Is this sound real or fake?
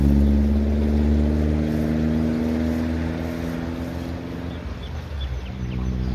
real